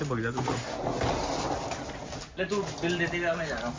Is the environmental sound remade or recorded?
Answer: recorded